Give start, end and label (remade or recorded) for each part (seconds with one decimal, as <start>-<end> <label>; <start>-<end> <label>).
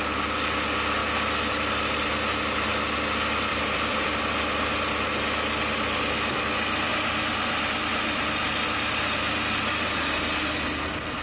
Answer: 0.0-3.5 recorded; 3.5-4.2 remade; 4.2-6.9 recorded; 6.9-8.5 remade; 8.5-11.2 recorded